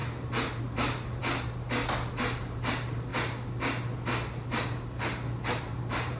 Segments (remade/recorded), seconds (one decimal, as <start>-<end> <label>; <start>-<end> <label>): 0.0-0.6 recorded; 0.6-1.2 remade; 1.2-2.4 recorded; 2.4-3.1 remade; 3.1-5.5 recorded; 5.5-6.2 remade